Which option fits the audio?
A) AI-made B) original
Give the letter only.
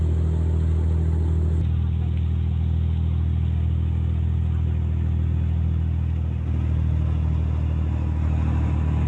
B